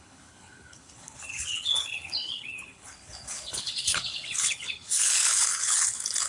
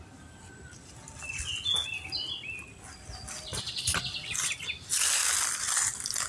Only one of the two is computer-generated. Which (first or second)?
first